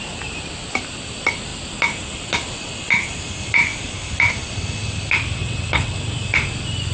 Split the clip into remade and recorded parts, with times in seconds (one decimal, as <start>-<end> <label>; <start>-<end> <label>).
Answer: 0.0-5.4 recorded; 5.4-5.9 remade; 5.9-6.9 recorded